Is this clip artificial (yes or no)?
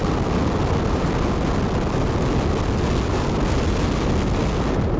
no